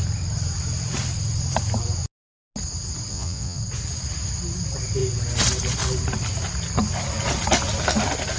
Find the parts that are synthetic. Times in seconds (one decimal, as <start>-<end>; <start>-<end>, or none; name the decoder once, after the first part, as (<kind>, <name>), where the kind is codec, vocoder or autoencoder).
3.1-3.6 (vocoder, Vocos)